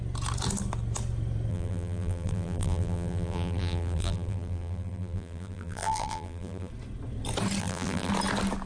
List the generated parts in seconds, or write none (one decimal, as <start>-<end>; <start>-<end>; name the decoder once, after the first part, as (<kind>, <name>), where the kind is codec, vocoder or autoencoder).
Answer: 1.5-6.7 (vocoder, BigVGAN v2); 7.6-8.1